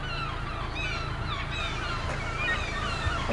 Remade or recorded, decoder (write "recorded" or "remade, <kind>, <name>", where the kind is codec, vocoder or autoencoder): recorded